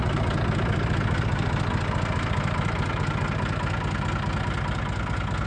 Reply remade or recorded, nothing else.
recorded